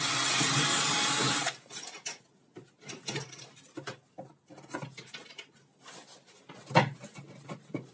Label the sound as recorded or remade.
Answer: recorded